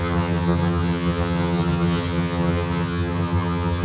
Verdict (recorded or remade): remade